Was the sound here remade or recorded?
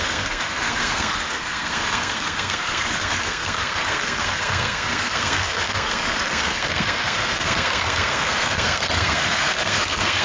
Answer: remade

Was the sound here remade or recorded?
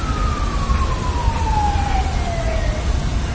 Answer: recorded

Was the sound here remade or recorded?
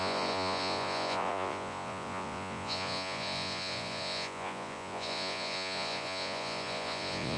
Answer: remade